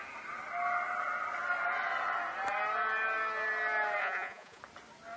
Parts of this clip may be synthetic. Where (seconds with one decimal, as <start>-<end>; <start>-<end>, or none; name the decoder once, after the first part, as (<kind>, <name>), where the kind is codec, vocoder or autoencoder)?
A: 4.0-4.6 (vocoder, Vocos)

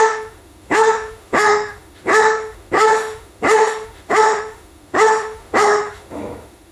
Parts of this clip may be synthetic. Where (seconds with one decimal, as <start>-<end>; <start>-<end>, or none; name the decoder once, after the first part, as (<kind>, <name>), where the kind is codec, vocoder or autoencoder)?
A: 0.0-6.7 (autoencoder, DAC-VAE)